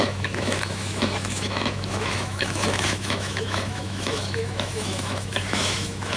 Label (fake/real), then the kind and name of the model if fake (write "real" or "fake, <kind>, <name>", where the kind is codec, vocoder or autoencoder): fake, autoencoder, DAC-VAE